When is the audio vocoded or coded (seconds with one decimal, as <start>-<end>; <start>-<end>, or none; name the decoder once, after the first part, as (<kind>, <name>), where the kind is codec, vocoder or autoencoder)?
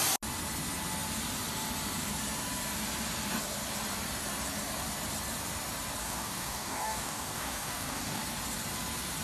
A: 6.0-8.2 (codec, DAC)